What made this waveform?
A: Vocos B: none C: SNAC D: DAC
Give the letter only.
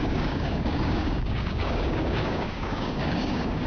D